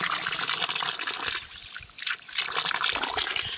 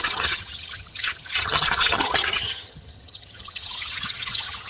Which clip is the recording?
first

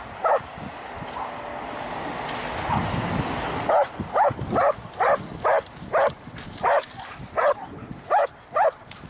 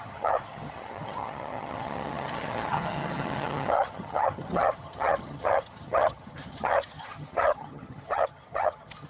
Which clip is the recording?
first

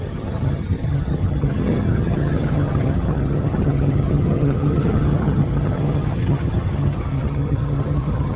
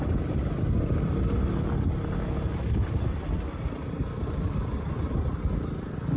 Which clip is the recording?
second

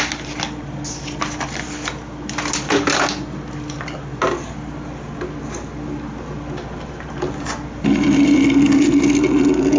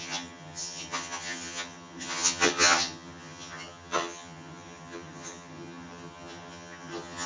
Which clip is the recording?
first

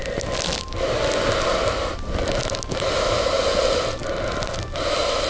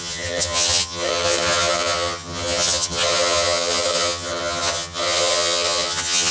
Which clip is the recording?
first